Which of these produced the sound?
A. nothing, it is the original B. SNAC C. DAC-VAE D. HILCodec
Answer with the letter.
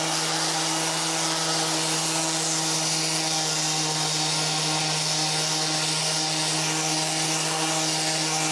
A